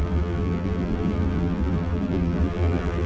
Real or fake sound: fake